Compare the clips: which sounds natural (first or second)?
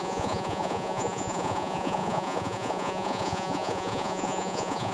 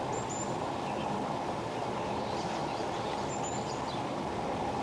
second